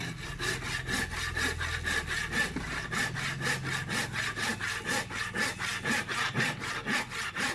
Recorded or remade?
recorded